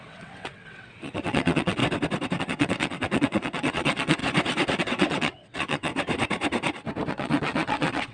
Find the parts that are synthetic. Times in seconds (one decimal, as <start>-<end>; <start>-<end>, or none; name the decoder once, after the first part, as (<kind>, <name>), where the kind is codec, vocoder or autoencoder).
0.0-1.8 (vocoder, WaveNeXt); 2.4-4.2; 4.8-5.9; 7.1-8.1